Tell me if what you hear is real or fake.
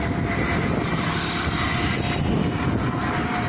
real